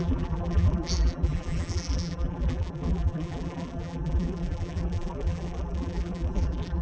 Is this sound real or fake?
fake